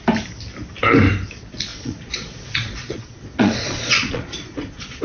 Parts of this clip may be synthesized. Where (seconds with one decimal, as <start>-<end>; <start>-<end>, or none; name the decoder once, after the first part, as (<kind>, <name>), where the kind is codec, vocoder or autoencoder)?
1.7-5.0 (vocoder, Vocos)